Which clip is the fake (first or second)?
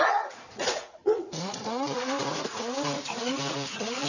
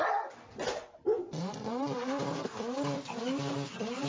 first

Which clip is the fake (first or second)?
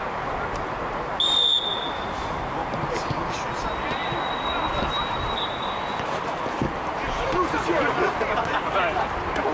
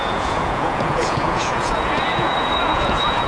second